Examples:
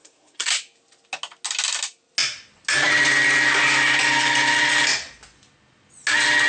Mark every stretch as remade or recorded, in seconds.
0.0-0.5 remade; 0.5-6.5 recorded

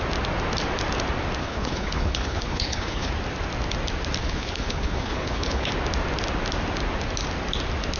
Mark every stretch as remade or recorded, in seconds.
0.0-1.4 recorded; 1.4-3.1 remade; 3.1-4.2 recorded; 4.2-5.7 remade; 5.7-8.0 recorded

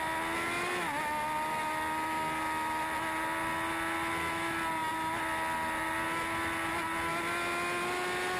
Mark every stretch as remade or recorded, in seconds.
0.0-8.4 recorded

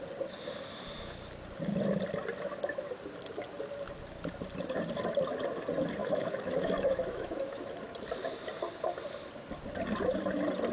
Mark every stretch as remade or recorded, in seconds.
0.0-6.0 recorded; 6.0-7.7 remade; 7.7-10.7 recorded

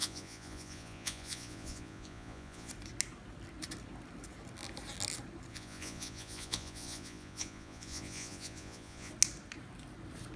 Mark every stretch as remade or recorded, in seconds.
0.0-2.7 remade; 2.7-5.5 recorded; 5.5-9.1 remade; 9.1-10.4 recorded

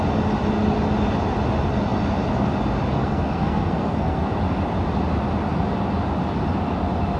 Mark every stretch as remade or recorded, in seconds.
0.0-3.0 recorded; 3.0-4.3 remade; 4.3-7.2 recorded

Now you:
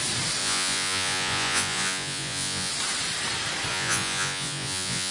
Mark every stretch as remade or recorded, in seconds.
0.0-0.4 recorded; 0.4-2.7 remade; 2.7-3.7 recorded; 3.7-5.1 remade

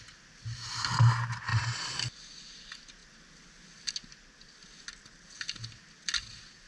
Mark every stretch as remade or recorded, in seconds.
0.0-1.5 recorded; 1.5-2.0 remade; 2.0-6.7 recorded